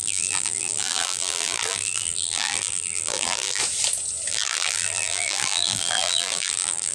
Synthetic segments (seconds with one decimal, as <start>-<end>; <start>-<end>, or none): 0.0-3.6; 4.3-6.9